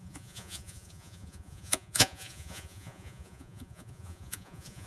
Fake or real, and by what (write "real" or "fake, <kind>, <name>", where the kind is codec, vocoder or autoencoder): fake, vocoder, Vocos